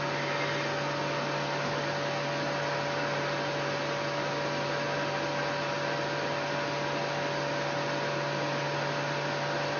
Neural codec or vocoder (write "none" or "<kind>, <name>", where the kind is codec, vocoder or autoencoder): none